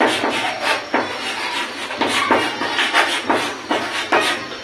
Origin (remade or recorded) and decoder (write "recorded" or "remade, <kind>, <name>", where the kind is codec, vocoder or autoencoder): recorded